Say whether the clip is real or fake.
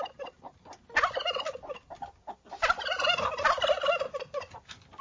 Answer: real